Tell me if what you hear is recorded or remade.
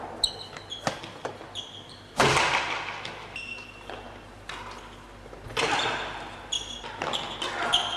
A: recorded